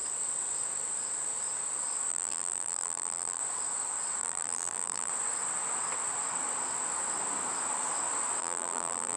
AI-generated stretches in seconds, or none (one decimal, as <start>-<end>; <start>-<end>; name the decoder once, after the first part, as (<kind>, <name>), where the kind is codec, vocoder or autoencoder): 2.1-3.4 (vocoder, BigVGAN v2); 4.2-5.1; 8.4-9.2